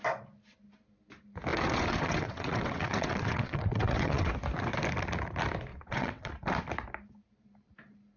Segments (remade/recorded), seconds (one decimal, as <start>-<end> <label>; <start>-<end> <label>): 0.0-1.5 recorded; 1.5-4.3 remade; 4.3-5.7 recorded; 5.7-6.3 remade; 6.3-8.2 recorded

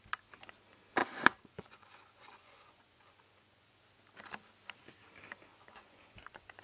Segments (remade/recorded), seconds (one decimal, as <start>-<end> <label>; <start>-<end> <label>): 0.0-1.0 recorded; 1.0-3.8 remade; 3.8-5.5 recorded; 5.5-6.6 remade

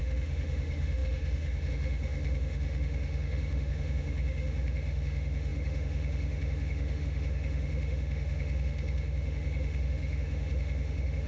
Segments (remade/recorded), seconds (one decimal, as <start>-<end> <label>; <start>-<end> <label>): 0.0-11.3 remade

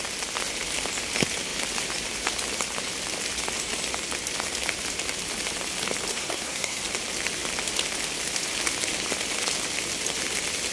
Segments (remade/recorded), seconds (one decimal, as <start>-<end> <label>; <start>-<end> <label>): 0.0-6.1 recorded; 6.1-6.8 remade; 6.8-10.7 recorded

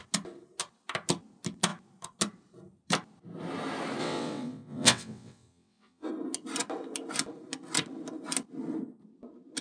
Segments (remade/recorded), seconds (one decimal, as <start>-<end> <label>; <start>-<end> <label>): 0.0-4.0 recorded; 4.0-6.1 remade; 6.1-9.6 recorded

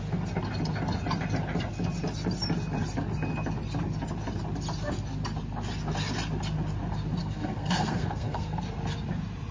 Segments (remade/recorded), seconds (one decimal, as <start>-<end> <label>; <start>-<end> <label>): 0.0-7.2 recorded; 7.2-8.6 remade; 8.6-9.5 recorded